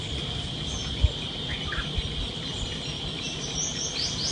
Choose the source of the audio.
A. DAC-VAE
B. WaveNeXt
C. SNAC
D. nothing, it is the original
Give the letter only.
D